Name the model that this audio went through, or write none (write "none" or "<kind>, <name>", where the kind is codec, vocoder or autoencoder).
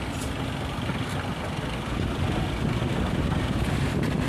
none